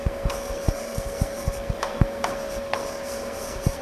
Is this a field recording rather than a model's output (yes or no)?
no